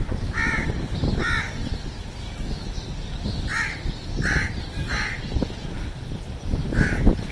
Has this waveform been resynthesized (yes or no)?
yes